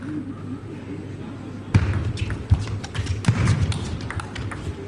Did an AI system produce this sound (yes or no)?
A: no